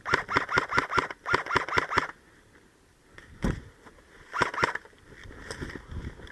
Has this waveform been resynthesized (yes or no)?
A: no